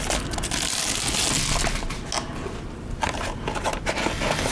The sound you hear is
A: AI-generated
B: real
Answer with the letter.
B